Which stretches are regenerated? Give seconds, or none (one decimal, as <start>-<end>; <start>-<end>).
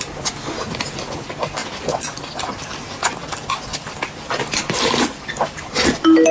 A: none